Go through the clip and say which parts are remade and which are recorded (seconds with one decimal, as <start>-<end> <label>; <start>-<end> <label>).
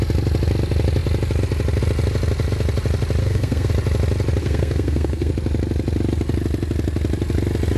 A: 0.0-3.2 recorded; 3.2-3.7 remade; 3.7-4.4 recorded; 4.4-5.3 remade; 5.3-7.8 recorded